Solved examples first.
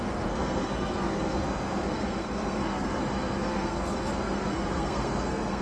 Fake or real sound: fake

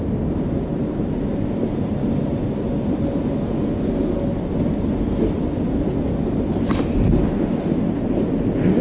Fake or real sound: real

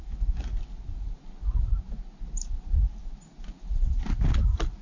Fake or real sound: real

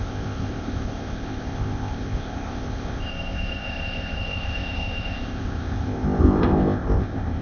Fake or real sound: fake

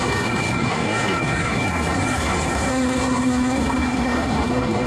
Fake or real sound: fake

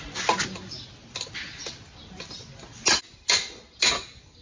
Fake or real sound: real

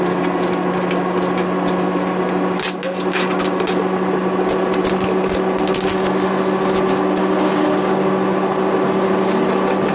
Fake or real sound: real